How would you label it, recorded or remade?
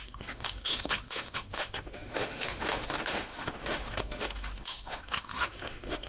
remade